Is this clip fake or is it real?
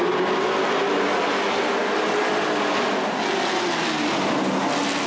real